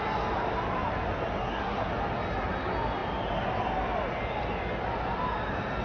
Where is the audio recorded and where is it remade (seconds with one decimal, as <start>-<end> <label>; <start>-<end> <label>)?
0.0-1.4 recorded; 1.4-1.9 remade; 1.9-5.8 recorded